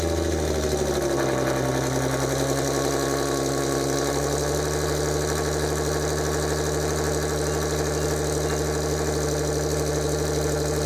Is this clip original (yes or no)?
yes